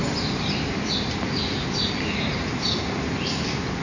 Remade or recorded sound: recorded